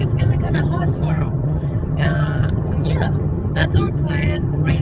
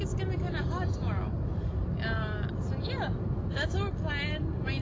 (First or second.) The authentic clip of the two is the second